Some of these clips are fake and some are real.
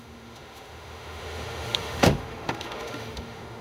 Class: fake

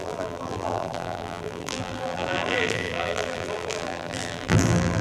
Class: fake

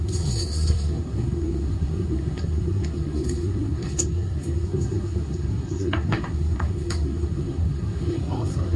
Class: fake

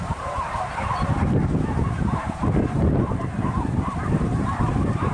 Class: fake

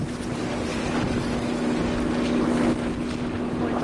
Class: real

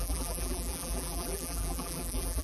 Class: fake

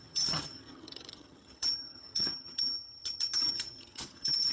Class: fake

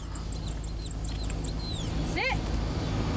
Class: real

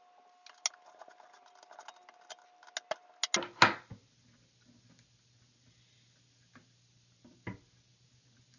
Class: real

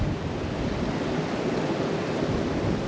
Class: real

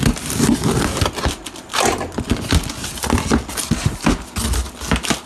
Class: real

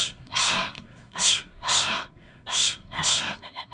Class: fake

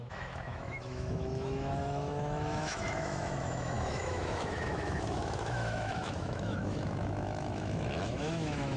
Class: fake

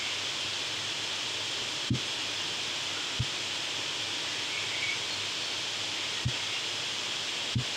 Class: real